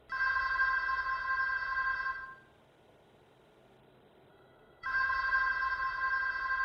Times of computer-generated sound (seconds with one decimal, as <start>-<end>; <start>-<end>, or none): 4.3-5.1